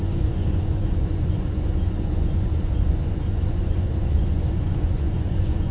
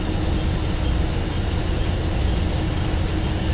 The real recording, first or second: second